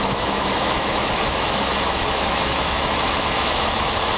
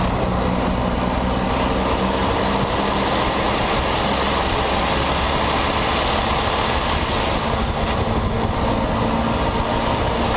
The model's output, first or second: first